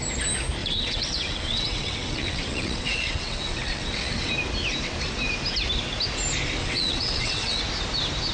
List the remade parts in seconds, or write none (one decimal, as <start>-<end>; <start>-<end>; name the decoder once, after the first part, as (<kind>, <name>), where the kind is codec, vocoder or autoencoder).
0.6-4.3 (vocoder, WaveNeXt); 6.6-7.6